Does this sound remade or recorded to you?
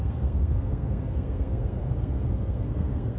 remade